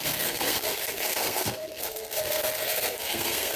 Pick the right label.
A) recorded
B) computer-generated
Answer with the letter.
B